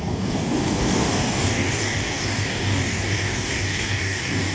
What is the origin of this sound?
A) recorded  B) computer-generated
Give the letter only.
B